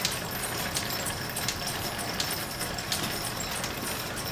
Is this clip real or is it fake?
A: real